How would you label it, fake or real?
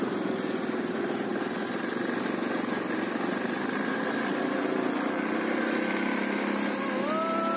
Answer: real